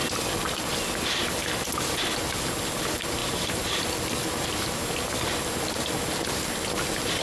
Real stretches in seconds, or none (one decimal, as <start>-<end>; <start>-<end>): 0.0-7.2